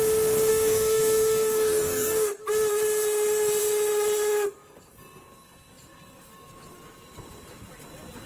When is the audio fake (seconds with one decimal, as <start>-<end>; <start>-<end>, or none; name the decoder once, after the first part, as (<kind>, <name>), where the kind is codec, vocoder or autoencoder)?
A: 0.5-2.4 (codec, DAC)